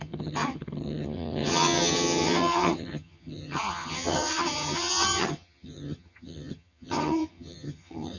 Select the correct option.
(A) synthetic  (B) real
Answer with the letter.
A